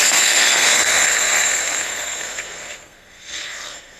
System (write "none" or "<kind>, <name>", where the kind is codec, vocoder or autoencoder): codec, SNAC